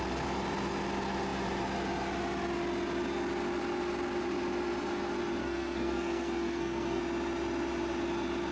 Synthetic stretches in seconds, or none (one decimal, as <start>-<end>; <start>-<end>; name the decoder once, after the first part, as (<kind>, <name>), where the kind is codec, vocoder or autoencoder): 5.4-7.0 (codec, SNAC)